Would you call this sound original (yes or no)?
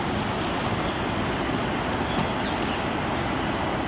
yes